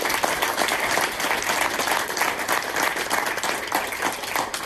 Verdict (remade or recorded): recorded